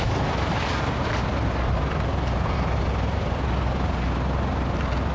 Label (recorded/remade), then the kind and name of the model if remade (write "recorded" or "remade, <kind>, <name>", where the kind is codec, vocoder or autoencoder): recorded